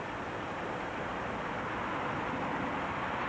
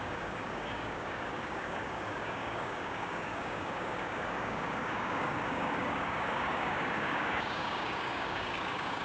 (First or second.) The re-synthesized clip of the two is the second